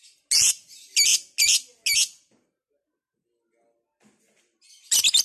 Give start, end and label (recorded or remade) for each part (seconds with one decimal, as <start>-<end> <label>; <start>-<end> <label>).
0.0-5.2 recorded